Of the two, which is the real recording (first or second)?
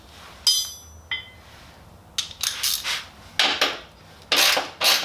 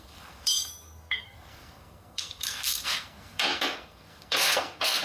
first